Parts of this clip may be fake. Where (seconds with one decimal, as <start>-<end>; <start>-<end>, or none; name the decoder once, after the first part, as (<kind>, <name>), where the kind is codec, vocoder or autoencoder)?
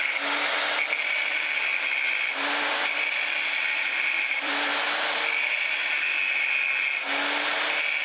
1.7-5.9 (vocoder, BigVGAN v2)